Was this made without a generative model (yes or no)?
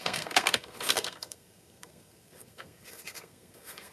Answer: no